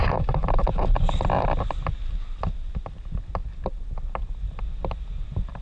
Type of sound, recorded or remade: recorded